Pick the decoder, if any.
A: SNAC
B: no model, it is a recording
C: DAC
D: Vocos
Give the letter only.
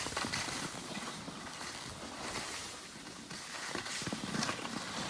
B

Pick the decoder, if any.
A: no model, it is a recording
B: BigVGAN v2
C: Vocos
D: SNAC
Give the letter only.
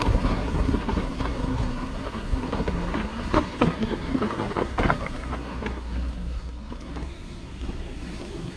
D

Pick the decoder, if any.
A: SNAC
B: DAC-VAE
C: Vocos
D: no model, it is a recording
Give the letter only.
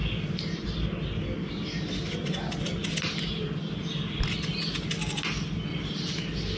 D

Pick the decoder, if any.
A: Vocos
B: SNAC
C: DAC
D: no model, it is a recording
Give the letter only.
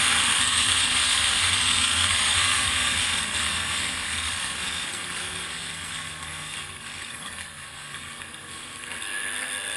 B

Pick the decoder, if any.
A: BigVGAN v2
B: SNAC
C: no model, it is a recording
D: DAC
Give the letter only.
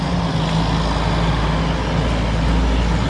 C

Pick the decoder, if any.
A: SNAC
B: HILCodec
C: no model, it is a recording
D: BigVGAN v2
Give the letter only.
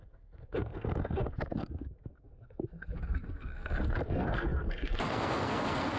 A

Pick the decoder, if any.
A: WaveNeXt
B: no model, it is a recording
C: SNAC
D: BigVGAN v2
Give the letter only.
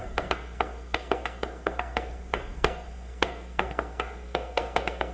C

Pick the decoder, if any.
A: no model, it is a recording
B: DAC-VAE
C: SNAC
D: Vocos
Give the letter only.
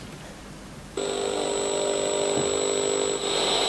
A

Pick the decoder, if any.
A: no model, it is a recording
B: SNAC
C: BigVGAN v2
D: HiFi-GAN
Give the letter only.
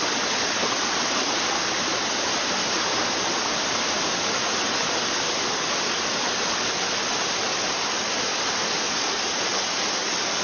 A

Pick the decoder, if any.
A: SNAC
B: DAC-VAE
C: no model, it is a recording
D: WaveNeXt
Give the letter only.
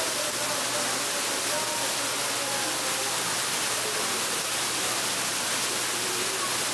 C